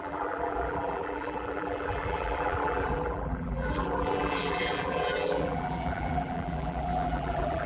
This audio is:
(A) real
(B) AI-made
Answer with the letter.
B